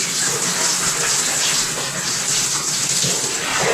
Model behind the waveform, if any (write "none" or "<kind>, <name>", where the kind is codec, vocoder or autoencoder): none